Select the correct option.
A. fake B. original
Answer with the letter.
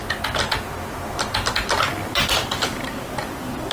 B